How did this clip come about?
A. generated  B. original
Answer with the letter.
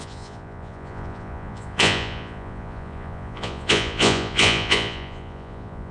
A